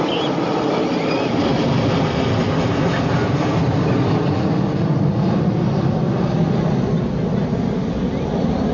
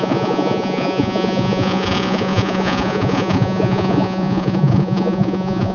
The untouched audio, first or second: first